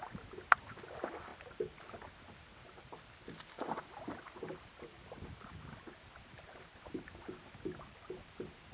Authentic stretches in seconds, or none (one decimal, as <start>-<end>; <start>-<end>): 0.0-1.3; 3.0-4.7; 7.0-8.7